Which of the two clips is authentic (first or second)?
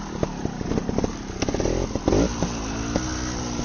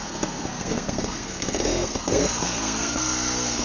first